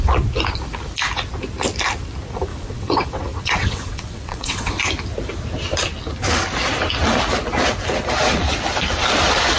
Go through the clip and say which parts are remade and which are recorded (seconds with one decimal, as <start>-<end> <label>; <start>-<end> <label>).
0.0-2.5 recorded; 2.5-4.8 remade; 4.8-9.6 recorded